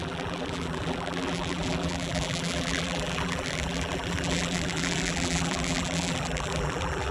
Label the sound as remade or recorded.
remade